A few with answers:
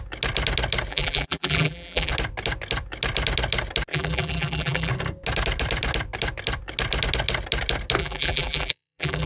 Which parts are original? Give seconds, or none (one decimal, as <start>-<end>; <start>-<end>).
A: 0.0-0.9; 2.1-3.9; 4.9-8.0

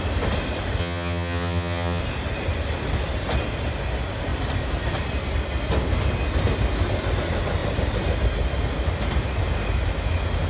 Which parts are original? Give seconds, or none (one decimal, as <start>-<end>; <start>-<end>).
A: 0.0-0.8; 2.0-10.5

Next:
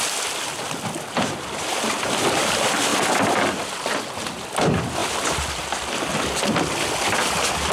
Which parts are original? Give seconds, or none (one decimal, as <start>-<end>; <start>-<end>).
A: 0.0-7.7

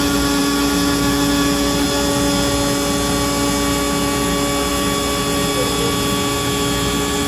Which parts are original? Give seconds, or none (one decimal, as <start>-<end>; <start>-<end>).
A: 0.0-7.3

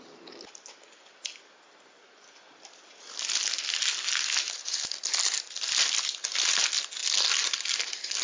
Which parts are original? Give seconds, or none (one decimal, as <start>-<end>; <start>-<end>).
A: 0.0-8.2

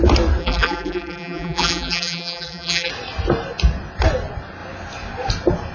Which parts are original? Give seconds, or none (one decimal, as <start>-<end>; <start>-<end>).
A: 0.0-0.4; 2.9-5.7

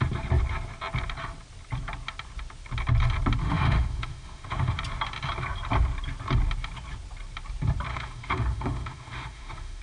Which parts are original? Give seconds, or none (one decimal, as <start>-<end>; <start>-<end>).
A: 0.0-3.4; 4.7-7.9

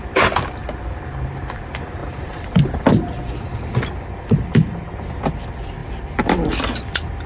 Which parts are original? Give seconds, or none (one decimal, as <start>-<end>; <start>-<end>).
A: 0.0-0.6; 1.6-2.0; 4.8-5.8; 6.5-7.3